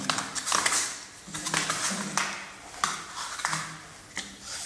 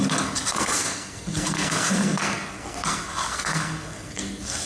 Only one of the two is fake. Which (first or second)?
second